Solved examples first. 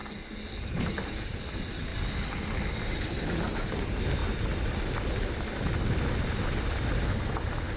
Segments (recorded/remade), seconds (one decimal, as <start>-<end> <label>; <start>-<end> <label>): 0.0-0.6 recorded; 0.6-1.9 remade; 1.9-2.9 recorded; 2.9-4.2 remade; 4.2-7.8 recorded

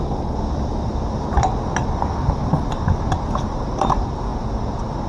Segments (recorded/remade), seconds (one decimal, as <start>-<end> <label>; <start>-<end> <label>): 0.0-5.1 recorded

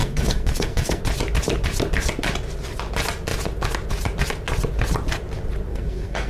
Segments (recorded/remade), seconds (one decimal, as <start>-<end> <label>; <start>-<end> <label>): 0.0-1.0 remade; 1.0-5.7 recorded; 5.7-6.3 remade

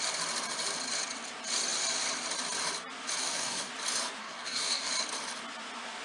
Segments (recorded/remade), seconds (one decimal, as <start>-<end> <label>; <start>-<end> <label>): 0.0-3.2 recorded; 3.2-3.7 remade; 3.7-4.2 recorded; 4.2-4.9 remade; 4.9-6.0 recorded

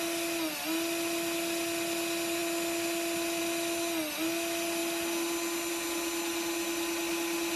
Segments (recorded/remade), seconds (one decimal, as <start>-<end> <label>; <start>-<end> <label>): 0.0-7.6 recorded

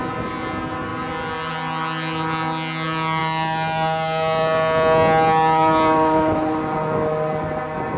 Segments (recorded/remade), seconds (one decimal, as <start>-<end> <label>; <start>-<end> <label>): 0.0-8.0 recorded

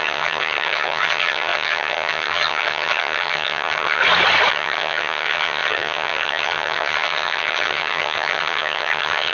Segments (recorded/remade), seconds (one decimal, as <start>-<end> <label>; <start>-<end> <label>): 0.0-4.0 remade; 4.0-4.5 recorded; 4.5-9.3 remade